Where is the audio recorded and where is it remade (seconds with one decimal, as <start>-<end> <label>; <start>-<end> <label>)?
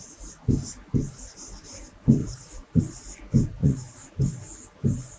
0.0-2.2 recorded; 2.2-2.8 remade; 2.8-3.6 recorded; 3.6-4.1 remade; 4.1-5.2 recorded